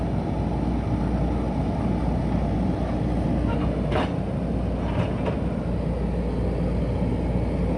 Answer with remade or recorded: recorded